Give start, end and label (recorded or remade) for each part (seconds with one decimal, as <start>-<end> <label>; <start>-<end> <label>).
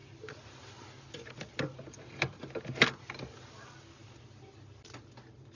0.0-5.6 recorded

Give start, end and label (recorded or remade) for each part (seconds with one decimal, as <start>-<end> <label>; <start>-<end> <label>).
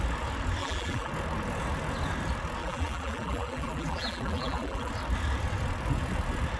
0.0-0.6 recorded; 0.6-1.1 remade; 1.1-2.6 recorded; 2.6-4.9 remade; 4.9-6.6 recorded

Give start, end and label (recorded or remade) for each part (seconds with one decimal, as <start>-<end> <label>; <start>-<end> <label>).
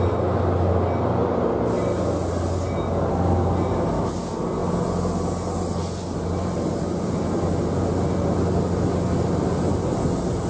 0.0-10.5 recorded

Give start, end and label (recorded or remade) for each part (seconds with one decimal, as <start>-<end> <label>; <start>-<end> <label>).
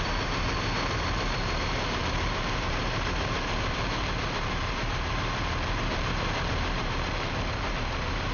0.0-8.3 remade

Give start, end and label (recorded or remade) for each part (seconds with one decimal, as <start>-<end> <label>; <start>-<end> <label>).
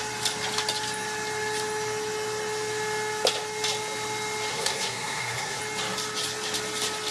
0.0-4.5 recorded; 4.5-5.6 remade; 5.6-7.1 recorded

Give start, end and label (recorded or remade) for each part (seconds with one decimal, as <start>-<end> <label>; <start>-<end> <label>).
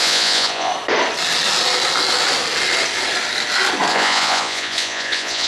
0.0-0.7 remade; 0.7-3.9 recorded; 3.9-5.5 remade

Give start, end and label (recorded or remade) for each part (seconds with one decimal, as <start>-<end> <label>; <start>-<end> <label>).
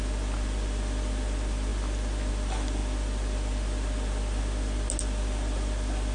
0.0-6.1 recorded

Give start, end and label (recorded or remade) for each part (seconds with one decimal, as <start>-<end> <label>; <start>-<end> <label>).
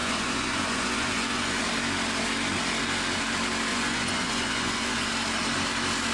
0.0-1.6 remade; 1.6-3.7 recorded; 3.7-5.1 remade; 5.1-6.1 recorded